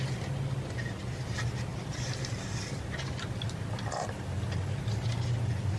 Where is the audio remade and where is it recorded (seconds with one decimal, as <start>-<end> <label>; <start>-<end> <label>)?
0.0-5.8 recorded

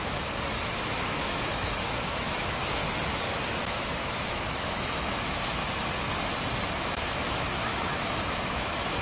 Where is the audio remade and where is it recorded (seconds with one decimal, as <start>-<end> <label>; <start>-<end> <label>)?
0.0-0.7 recorded; 0.7-2.8 remade; 2.8-3.5 recorded; 3.5-5.6 remade; 5.6-6.8 recorded; 6.8-9.0 remade